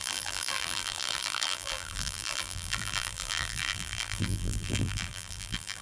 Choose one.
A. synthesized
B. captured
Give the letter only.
A